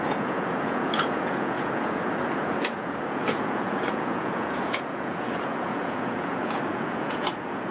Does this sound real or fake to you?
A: fake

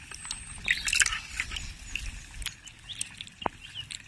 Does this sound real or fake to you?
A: real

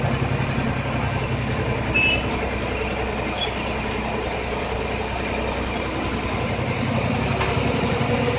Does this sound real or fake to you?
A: real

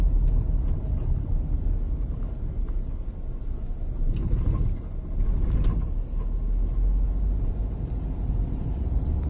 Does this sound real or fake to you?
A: real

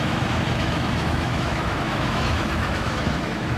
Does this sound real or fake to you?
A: fake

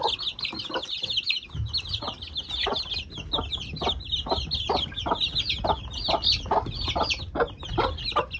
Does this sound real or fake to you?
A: real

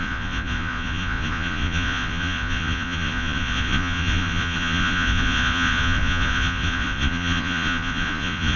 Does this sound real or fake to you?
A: fake